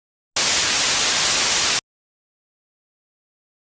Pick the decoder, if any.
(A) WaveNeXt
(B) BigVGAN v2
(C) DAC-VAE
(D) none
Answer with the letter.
D